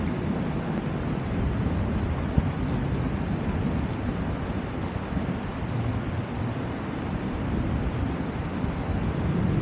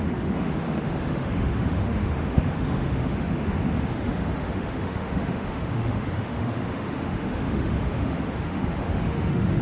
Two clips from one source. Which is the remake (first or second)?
second